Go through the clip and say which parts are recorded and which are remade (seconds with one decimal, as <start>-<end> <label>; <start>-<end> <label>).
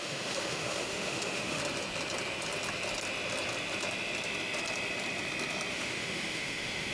0.0-1.6 remade; 1.6-5.7 recorded; 5.7-6.9 remade